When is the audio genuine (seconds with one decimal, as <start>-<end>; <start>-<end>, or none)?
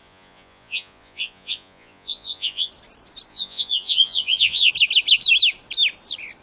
2.7-3.3; 4.7-6.4